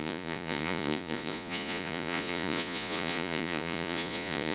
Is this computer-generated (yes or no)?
yes